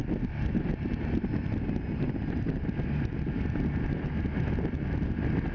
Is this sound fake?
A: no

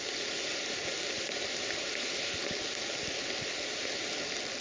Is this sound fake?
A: no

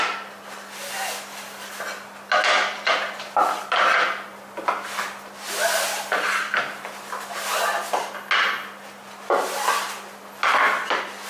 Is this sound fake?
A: no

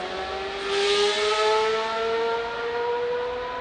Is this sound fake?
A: no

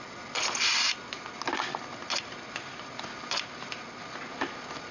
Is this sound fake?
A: no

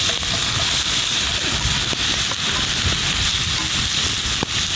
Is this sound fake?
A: no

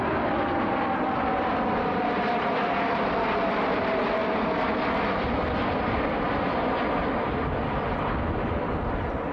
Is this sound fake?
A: no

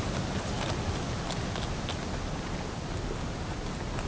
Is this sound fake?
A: no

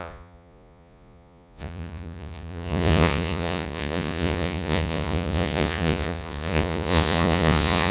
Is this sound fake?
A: yes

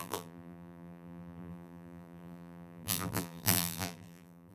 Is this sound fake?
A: yes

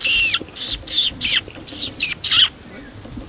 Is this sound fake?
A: no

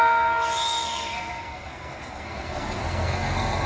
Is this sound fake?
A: yes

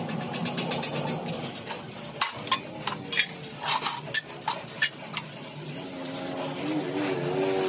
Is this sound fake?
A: no